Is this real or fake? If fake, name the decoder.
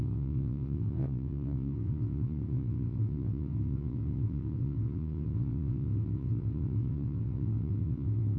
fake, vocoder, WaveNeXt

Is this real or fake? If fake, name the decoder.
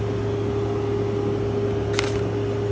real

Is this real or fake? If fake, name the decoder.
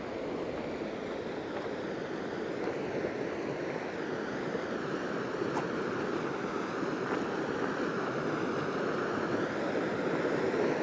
real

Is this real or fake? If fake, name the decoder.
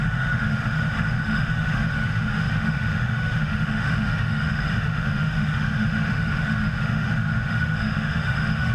fake, autoencoder, DAC-VAE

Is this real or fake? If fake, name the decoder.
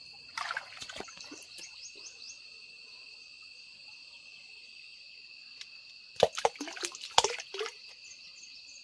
real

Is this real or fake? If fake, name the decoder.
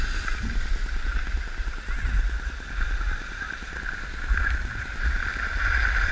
real